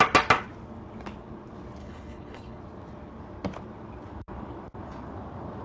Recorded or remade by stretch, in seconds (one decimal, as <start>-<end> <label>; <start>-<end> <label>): 0.0-1.8 recorded; 1.8-2.6 remade; 2.6-5.6 recorded